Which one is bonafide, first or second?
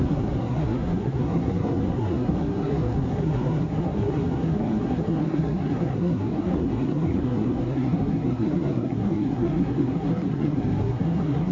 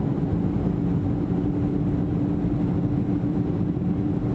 second